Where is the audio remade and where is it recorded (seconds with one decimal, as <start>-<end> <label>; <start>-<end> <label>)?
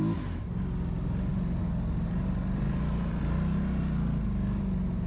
0.0-1.3 recorded; 1.3-3.2 remade; 3.2-5.1 recorded